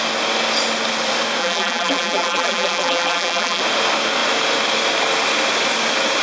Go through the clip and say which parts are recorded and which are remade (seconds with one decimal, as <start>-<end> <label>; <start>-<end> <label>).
0.0-1.4 recorded; 1.4-3.6 remade; 3.6-6.2 recorded